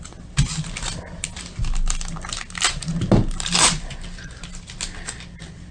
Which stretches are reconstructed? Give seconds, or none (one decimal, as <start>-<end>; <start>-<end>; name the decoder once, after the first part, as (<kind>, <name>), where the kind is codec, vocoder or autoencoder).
none